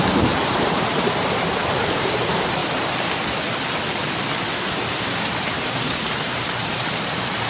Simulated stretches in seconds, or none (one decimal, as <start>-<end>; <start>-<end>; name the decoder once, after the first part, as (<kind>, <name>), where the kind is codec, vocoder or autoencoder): 0.0-2.6 (vocoder, BigVGAN v2); 5.0-7.5